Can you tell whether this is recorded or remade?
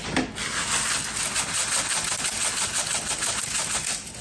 recorded